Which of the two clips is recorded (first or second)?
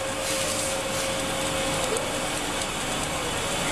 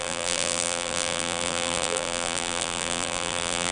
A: first